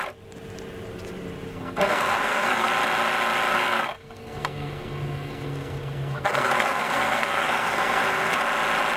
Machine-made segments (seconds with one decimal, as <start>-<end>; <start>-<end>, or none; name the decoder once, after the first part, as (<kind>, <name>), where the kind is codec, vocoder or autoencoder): 1.5-2.7 (codec, SNAC); 3.5-8.4